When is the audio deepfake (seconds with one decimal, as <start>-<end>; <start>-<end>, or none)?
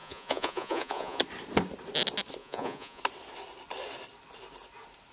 0.0-1.2; 2.4-3.0